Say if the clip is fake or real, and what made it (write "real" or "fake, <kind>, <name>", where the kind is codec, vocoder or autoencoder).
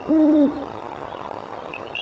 fake, vocoder, HiFi-GAN